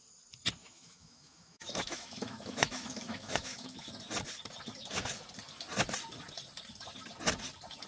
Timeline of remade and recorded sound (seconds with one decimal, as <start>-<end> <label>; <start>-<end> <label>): 0.0-0.6 recorded; 0.6-3.9 remade; 3.9-7.9 recorded